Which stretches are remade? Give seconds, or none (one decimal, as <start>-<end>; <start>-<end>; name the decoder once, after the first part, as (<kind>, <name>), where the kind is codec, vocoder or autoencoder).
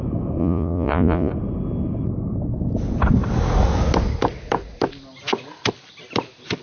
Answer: 0.4-1.3 (vocoder, Vocos)